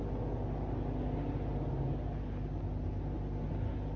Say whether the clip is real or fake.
real